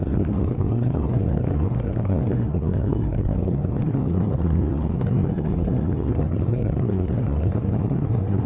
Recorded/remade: remade